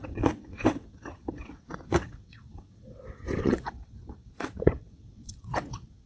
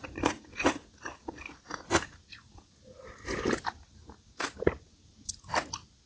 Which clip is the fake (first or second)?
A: first